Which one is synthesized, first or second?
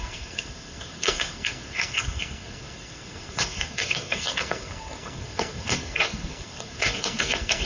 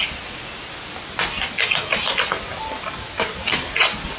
first